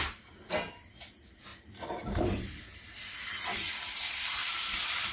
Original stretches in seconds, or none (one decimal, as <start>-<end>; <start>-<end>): none